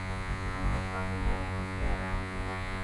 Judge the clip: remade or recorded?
remade